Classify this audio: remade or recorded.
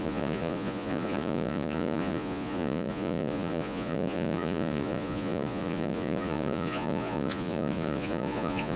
remade